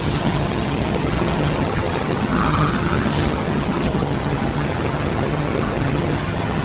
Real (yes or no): no